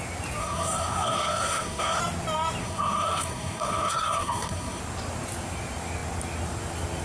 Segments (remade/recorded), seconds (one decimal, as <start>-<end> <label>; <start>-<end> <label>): 0.0-0.4 recorded; 0.4-2.0 remade; 2.0-2.6 recorded; 2.6-4.8 remade; 4.8-7.0 recorded